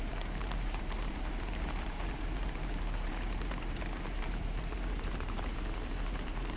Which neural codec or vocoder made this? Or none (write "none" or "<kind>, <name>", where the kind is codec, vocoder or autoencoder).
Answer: vocoder, BigVGAN v2